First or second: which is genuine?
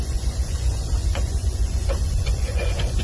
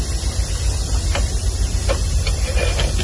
second